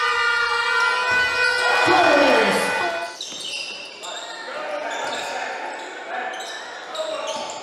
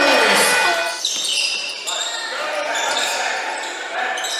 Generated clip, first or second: second